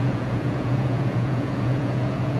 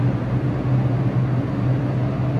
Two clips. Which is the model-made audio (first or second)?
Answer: first